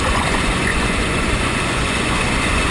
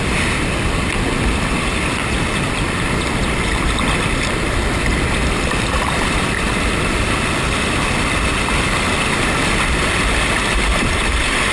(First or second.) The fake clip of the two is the first